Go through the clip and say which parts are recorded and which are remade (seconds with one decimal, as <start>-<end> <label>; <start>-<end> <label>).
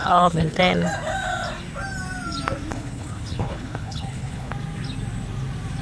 0.0-0.6 remade; 0.6-2.7 recorded; 2.7-4.5 remade; 4.5-5.8 recorded